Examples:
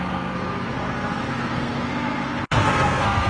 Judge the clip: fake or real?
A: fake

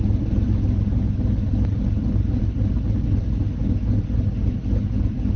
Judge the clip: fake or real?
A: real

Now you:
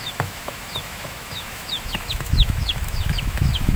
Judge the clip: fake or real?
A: fake